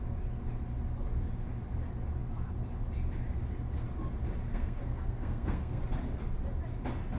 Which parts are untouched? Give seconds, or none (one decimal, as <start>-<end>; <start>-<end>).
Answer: 0.0-4.5; 5.8-7.2